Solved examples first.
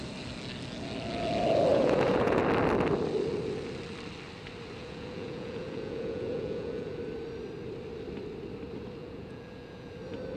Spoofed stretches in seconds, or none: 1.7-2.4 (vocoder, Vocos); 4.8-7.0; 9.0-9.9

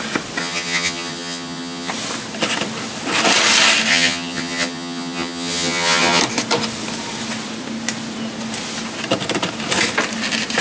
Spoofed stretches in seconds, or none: 0.4-1.9 (vocoder, HiFi-GAN); 3.9-6.2